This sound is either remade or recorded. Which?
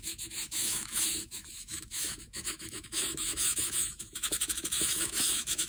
remade